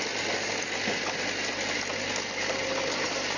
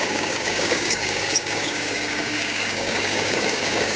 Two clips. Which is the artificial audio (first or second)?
second